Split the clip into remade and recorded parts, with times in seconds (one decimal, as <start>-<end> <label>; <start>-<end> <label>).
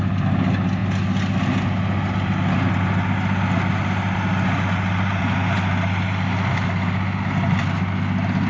0.0-8.5 recorded